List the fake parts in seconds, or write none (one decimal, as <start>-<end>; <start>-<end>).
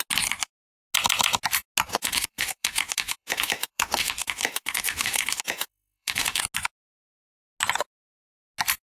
1.9-6.4